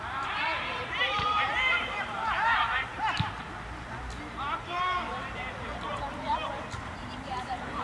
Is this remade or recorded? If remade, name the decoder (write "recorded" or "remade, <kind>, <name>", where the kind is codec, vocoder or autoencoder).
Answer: remade, vocoder, BigVGAN v2